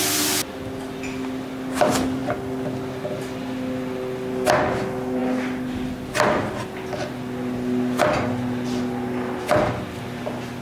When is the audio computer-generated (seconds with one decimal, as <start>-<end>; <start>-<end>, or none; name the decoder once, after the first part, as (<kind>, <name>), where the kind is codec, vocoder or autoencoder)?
none